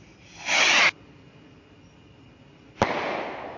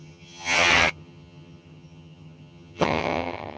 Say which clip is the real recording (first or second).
first